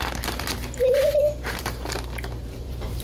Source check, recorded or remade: remade